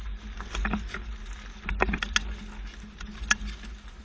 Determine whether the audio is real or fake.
real